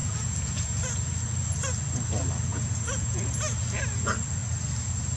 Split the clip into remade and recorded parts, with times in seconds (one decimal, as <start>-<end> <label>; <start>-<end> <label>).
0.0-0.8 remade; 0.8-2.5 recorded; 2.5-3.2 remade; 3.2-5.2 recorded